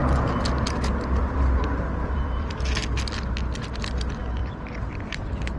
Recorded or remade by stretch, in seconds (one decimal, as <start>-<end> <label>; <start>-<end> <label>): 0.0-1.2 recorded; 1.2-2.8 remade; 2.8-3.8 recorded; 3.8-4.4 remade; 4.4-5.0 recorded; 5.0-5.6 remade